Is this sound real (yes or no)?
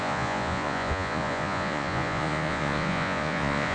no